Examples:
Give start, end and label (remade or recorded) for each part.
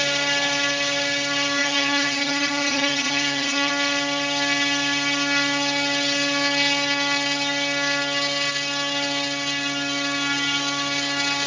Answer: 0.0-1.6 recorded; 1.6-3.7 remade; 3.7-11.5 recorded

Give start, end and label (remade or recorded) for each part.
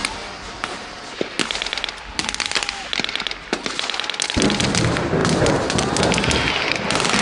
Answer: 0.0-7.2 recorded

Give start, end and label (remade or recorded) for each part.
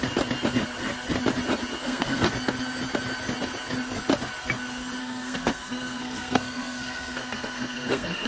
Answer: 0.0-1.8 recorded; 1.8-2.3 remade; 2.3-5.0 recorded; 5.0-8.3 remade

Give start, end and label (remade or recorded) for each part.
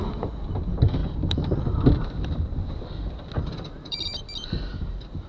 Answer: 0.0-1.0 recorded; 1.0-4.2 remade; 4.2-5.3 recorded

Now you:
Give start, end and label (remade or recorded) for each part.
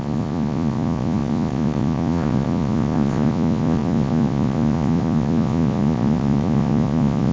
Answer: 0.0-7.3 remade